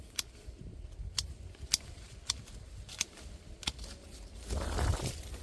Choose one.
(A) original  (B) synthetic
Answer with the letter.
A